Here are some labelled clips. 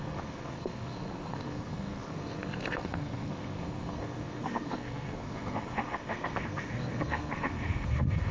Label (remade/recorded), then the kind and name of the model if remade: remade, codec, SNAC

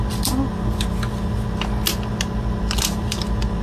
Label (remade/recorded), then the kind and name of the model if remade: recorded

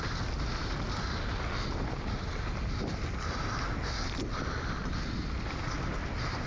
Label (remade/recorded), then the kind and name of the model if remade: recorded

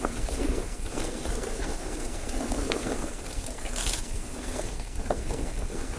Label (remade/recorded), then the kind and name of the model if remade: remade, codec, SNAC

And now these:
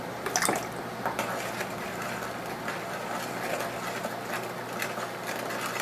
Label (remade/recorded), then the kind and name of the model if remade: recorded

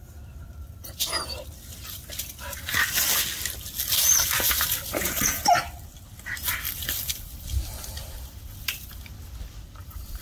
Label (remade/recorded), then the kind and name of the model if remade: recorded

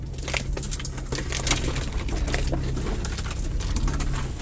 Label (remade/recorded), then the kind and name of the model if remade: recorded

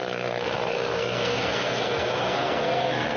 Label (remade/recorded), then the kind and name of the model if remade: remade, codec, SNAC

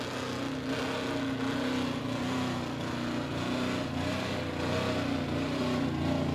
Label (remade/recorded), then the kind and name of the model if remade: recorded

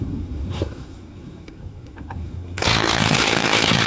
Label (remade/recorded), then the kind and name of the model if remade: remade, codec, SNAC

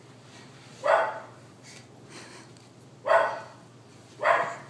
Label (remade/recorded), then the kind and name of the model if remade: recorded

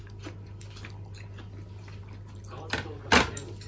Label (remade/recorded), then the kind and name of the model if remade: recorded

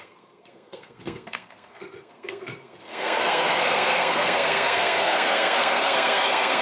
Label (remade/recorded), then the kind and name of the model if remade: remade, codec, SNAC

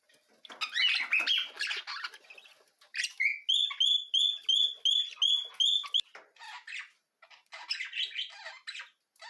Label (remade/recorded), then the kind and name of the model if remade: recorded